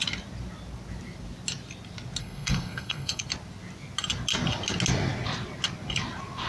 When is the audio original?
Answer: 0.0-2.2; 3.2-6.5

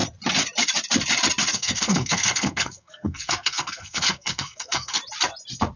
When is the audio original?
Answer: 0.0-1.5; 5.0-5.8

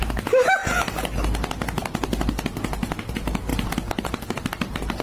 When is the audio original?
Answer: 0.6-3.0; 3.5-4.0

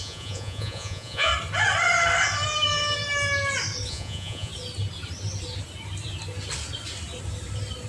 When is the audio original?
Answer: 1.3-3.9; 4.5-7.9

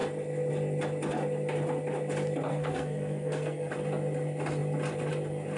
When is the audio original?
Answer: 0.0-2.5; 3.7-5.6

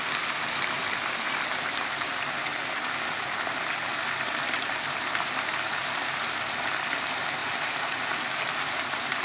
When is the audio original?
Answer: 2.5-3.2; 3.9-4.9

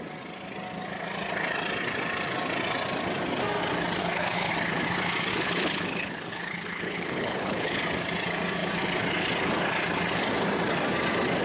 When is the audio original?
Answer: 0.0-4.0; 4.5-5.3; 7.8-11.4